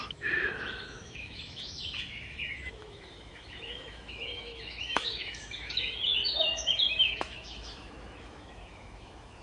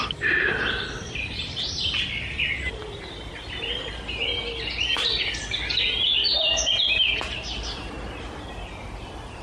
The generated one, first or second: first